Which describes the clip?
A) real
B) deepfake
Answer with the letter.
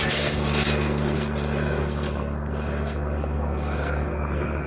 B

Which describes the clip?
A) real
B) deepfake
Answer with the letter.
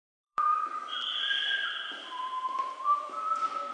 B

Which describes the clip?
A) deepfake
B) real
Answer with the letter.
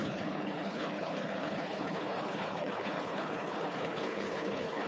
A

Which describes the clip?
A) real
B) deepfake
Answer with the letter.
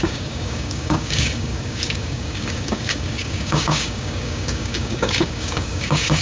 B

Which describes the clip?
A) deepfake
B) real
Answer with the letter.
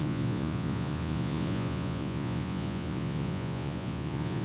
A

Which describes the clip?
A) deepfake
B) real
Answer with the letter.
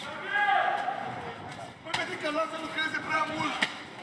B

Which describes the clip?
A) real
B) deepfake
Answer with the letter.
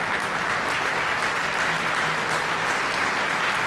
A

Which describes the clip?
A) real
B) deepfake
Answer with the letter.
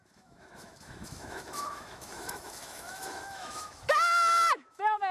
B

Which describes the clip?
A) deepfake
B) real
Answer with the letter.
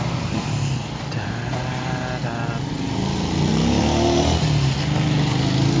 B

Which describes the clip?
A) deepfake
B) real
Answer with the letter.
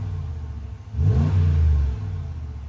B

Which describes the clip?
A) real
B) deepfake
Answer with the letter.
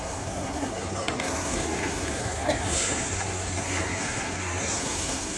B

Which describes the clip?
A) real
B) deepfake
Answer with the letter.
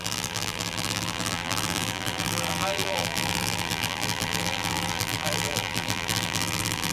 B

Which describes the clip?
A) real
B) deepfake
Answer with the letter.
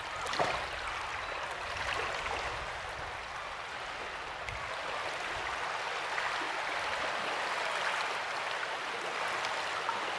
A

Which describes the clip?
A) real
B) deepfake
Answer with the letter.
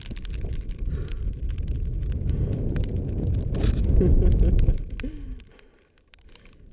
A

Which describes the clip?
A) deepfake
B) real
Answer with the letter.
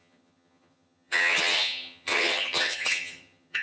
A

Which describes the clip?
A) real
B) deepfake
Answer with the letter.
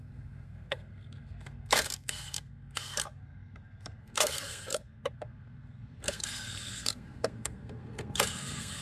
B